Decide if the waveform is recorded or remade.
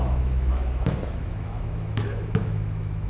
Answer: remade